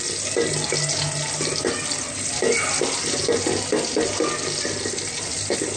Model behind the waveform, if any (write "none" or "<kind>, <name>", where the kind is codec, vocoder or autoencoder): none